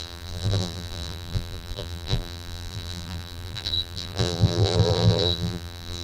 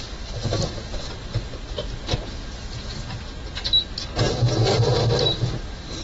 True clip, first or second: second